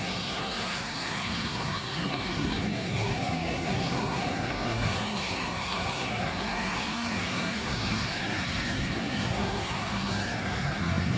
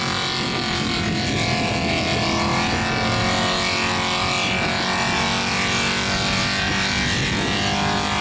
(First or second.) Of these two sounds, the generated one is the first